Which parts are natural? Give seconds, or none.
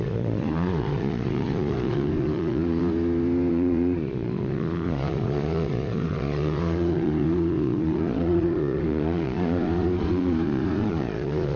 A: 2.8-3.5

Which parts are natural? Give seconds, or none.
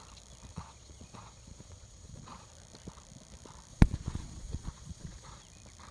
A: 0.0-0.5; 2.5-3.7; 5.4-5.9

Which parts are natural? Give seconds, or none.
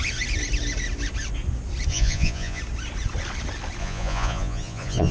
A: 0.0-1.9; 2.6-3.8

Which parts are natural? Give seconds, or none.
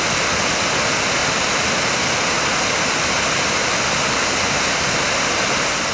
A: 0.0-5.9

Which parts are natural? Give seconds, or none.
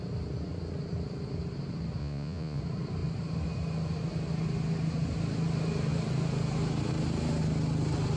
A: 0.0-2.0; 2.6-8.2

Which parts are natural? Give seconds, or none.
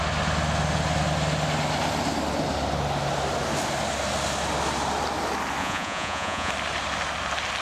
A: 0.0-5.6; 6.5-7.6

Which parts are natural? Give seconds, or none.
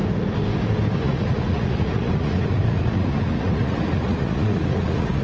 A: 0.0-1.0